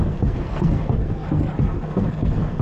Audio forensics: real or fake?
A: fake